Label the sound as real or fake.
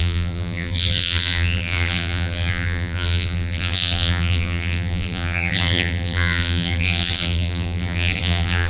fake